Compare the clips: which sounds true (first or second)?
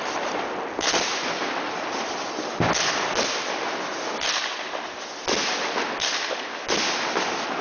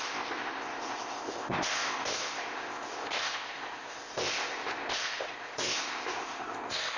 first